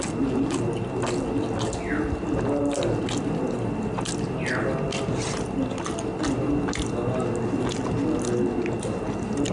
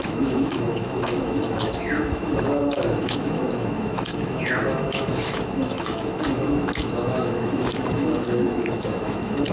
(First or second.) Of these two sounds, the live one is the first